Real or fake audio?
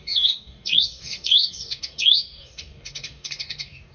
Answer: fake